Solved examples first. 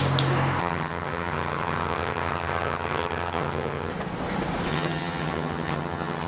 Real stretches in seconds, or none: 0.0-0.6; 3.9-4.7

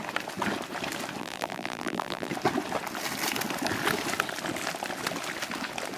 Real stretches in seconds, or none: 0.0-1.2; 2.3-6.0

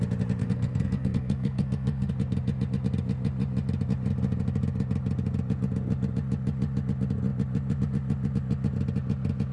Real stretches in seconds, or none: 0.0-0.4; 2.1-9.5

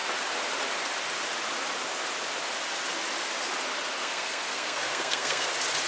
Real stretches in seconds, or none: 0.0-4.0; 5.5-5.9

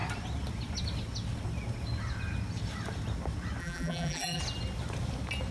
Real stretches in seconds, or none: 0.0-3.6; 4.4-5.5

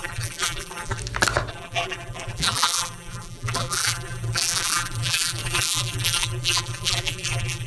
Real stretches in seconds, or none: 1.0-1.5